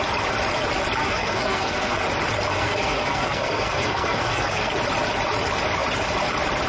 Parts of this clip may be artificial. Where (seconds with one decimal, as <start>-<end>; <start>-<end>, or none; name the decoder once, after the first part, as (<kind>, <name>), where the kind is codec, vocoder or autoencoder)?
1.0-2.0 (codec, SNAC); 2.5-4.7